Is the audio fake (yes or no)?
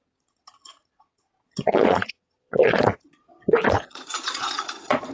yes